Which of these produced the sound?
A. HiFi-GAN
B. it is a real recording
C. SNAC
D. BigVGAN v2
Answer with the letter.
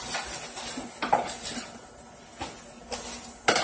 B